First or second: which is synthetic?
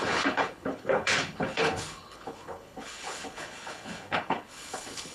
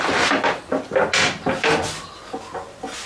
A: first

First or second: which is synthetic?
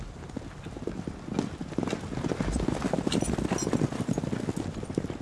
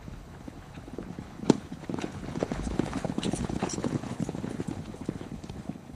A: second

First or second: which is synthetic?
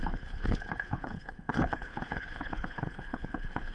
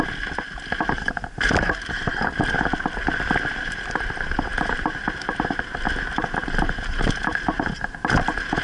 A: first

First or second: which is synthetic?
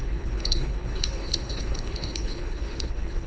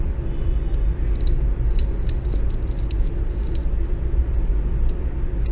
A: first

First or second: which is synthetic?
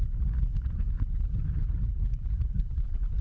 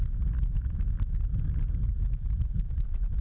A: first